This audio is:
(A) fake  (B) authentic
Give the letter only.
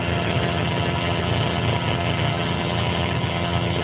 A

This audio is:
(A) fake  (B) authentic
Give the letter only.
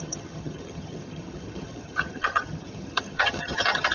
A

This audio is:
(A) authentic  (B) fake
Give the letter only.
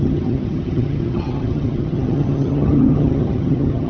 B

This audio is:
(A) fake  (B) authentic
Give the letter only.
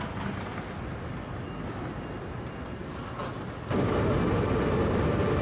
B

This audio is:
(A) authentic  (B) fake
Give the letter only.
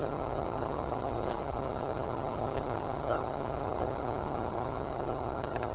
B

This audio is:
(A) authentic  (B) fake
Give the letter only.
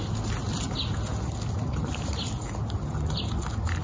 A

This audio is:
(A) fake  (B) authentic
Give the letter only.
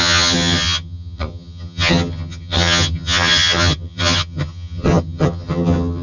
A